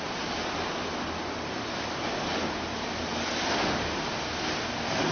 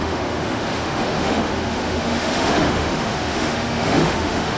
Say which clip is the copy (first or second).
second